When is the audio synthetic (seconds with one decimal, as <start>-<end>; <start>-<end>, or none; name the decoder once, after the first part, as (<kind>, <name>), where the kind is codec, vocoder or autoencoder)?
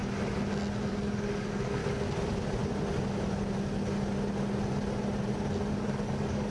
0.9-1.8 (codec, DAC); 5.7-6.5